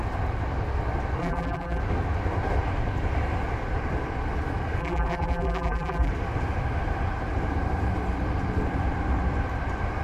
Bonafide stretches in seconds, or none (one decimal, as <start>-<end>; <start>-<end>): 0.0-1.2; 1.8-4.8; 6.1-10.0